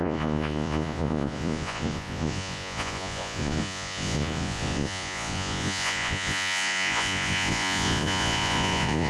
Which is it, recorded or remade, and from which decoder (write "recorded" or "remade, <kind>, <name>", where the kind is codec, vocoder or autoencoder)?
remade, vocoder, Vocos